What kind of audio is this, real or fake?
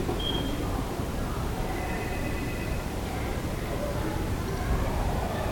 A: fake